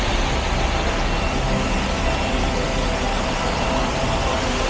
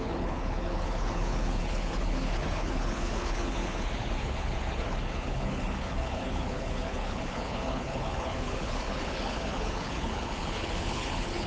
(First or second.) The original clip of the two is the first